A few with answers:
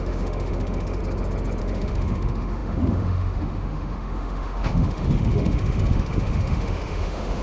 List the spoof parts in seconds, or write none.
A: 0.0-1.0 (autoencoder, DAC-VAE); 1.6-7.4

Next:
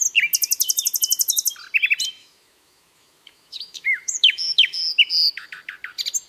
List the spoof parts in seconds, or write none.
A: 2.2-4.8 (autoencoder, DAC-VAE)